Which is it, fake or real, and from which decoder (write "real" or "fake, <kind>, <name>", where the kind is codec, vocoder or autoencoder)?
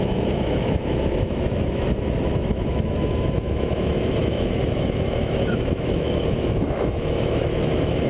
fake, autoencoder, DAC-VAE